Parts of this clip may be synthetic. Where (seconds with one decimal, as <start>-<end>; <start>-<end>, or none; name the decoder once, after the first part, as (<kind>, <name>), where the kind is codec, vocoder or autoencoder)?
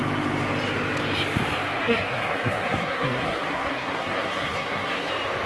1.8-5.1 (codec, SNAC)